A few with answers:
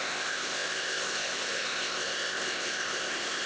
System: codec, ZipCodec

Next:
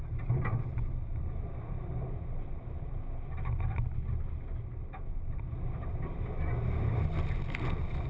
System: none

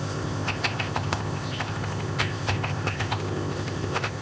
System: codec, ZipCodec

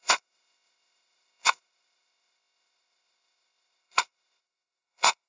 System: codec, ZipCodec